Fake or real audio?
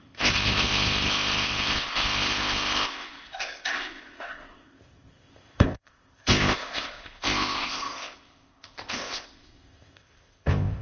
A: fake